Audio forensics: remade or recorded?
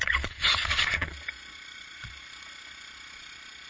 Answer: remade